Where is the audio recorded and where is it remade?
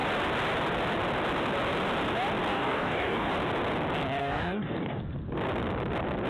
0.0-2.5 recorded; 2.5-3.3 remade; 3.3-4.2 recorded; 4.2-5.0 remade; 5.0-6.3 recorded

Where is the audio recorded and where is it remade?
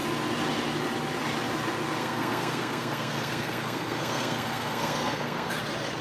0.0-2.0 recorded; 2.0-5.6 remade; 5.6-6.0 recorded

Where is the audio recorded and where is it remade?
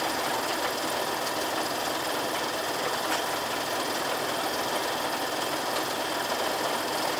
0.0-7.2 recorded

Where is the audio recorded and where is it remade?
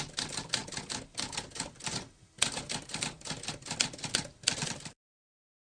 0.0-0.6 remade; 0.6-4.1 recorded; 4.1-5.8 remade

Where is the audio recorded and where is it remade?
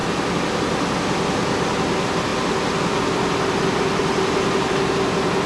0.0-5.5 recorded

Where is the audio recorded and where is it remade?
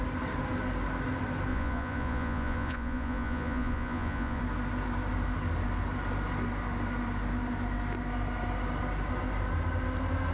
0.0-1.5 recorded; 1.5-4.4 remade; 4.4-10.3 recorded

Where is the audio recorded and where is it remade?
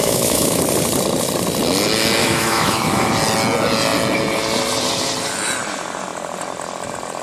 0.0-0.6 remade; 0.6-2.2 recorded; 2.2-3.1 remade; 3.1-7.2 recorded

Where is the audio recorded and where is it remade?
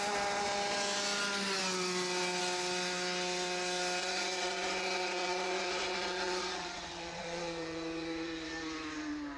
0.0-4.0 recorded; 4.0-8.5 remade; 8.5-9.4 recorded